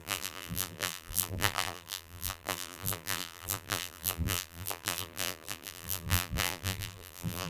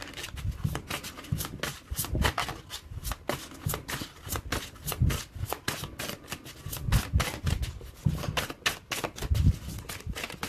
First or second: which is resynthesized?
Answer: first